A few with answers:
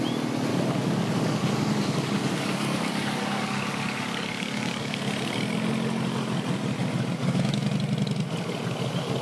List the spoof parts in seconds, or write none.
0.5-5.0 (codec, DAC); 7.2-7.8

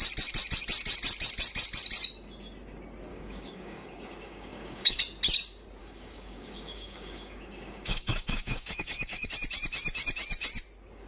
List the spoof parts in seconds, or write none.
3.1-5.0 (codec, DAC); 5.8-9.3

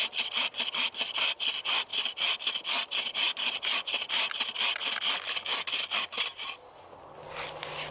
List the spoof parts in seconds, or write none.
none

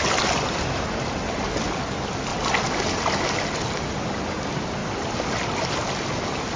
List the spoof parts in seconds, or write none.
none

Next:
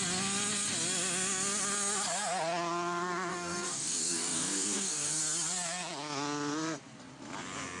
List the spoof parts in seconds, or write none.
3.3-5.2 (codec, DAC)